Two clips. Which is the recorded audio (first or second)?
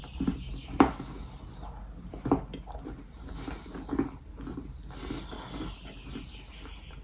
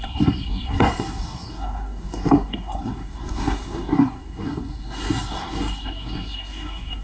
first